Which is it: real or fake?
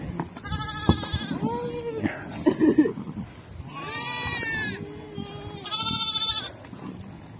real